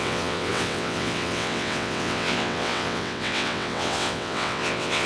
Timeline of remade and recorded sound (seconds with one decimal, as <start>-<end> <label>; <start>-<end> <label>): 0.0-5.1 remade